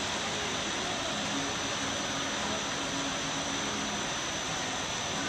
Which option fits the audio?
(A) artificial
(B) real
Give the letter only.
B